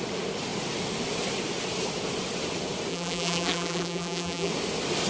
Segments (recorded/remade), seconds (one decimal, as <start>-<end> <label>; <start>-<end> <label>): 0.0-2.9 recorded; 2.9-4.5 remade; 4.5-5.1 recorded